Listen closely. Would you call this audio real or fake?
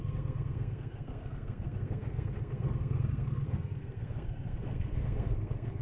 fake